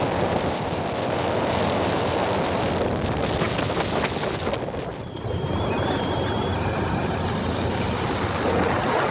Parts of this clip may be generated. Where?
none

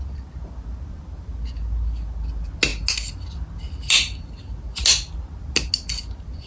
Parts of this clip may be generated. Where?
none